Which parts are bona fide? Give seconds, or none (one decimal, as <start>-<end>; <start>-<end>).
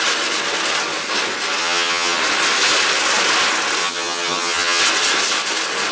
0.0-1.6; 2.2-3.8; 4.8-5.9